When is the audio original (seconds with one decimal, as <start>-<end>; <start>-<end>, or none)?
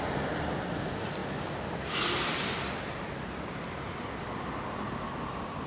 0.0-5.7